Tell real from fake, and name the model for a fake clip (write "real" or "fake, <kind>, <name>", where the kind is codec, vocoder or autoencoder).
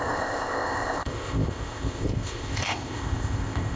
fake, codec, ZipCodec